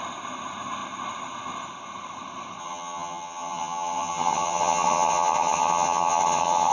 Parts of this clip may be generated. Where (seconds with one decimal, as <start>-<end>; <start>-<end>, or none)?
2.6-6.7